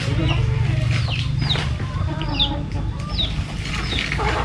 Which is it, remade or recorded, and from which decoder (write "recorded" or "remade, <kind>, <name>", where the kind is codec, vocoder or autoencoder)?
recorded